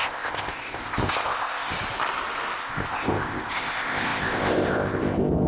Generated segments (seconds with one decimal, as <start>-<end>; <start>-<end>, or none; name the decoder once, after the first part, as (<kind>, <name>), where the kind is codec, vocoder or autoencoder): 0.0-1.7 (codec, ZipCodec); 2.6-5.5